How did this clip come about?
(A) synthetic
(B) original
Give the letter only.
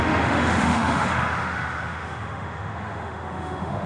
A